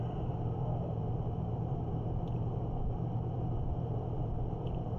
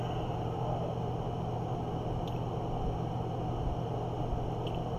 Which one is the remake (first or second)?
first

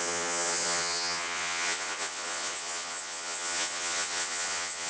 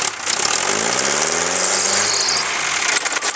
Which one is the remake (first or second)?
first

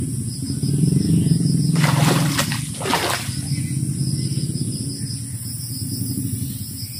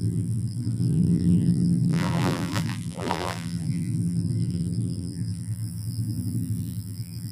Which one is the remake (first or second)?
second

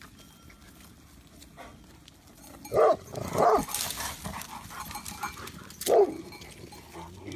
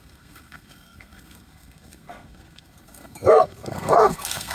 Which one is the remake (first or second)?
second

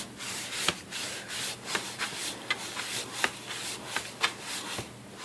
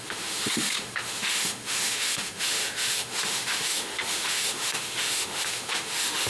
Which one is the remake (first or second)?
second